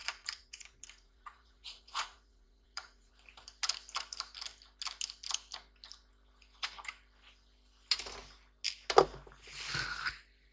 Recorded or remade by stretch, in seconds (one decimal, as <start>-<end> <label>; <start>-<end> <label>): 0.0-3.1 remade; 3.1-10.5 recorded